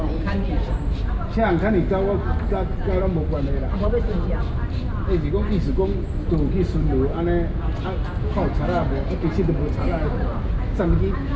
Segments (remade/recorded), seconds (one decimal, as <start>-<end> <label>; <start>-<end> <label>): 0.0-11.4 recorded

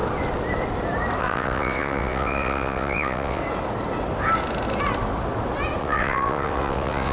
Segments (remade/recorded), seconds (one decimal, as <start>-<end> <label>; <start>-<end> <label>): 0.0-1.2 recorded; 1.2-3.4 remade; 3.4-5.8 recorded; 5.8-7.1 remade